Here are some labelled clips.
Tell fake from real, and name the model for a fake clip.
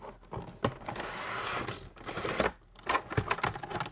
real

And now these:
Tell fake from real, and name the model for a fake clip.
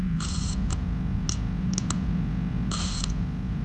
real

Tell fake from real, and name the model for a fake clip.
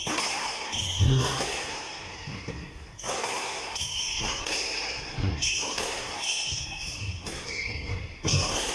fake, codec, SNAC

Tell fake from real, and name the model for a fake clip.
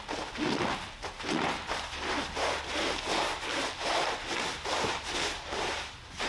real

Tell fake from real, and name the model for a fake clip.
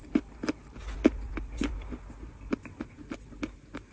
real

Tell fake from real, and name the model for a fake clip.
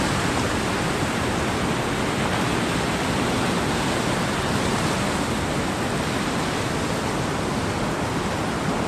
real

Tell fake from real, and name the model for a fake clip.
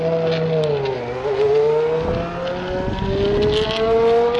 real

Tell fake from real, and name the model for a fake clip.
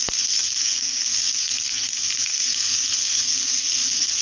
fake, codec, SNAC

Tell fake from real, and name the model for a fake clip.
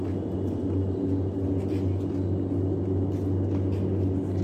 real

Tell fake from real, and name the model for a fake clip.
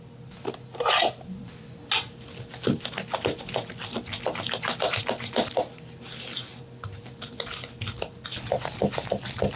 real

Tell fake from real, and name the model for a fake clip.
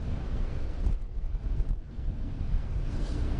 fake, codec, SNAC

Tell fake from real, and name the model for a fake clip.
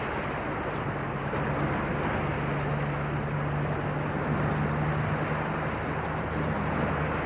real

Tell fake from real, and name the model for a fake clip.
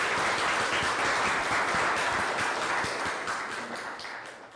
real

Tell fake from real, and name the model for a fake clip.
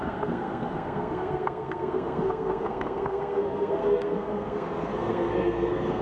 fake, codec, SNAC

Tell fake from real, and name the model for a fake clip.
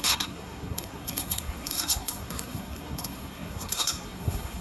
fake, codec, SNAC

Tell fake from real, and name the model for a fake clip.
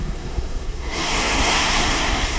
fake, codec, SNAC